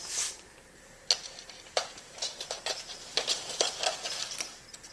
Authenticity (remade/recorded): remade